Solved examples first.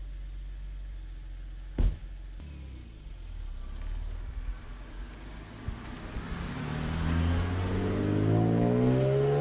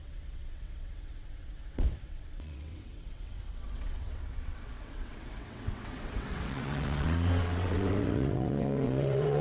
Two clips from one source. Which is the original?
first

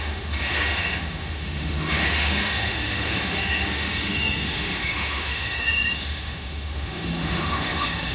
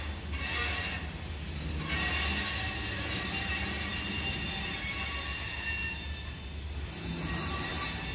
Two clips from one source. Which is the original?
second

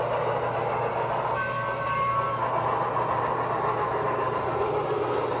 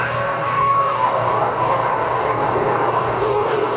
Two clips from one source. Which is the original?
first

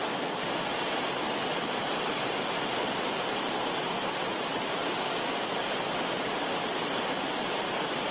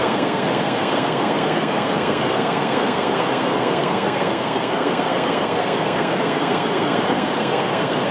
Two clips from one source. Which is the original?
first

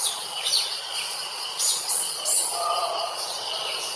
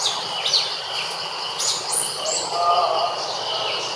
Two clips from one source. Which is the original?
second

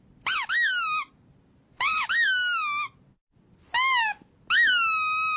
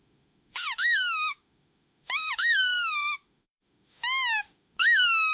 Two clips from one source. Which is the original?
first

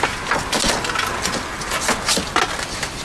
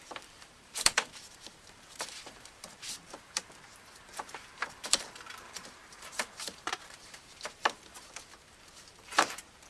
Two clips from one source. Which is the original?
first